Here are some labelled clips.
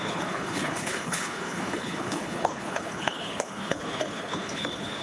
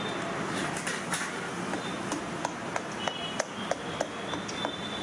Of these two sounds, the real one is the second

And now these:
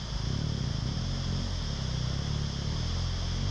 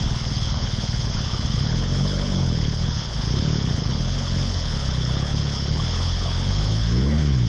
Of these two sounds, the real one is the first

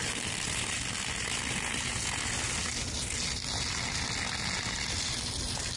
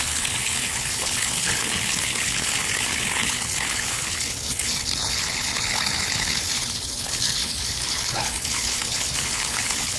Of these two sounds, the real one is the first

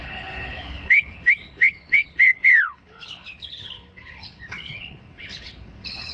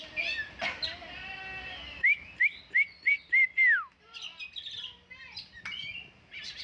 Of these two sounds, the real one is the second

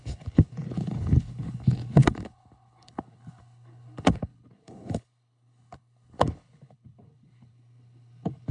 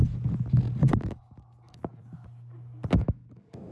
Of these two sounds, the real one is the second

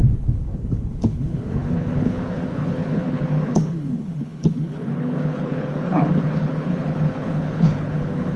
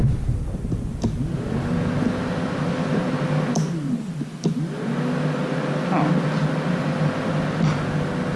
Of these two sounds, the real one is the second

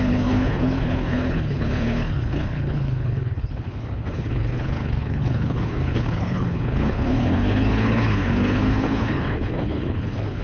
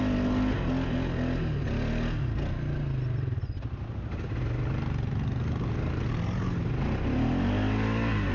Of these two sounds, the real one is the second